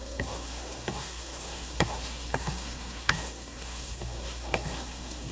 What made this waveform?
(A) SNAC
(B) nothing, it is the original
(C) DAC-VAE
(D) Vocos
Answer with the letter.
A